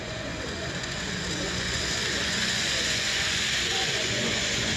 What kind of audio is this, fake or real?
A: fake